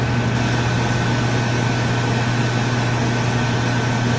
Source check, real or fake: real